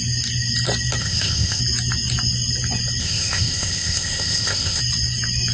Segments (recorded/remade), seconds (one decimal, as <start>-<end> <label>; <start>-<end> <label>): 0.0-1.0 recorded; 1.0-1.6 remade; 1.6-3.0 recorded; 3.0-4.8 remade; 4.8-5.5 recorded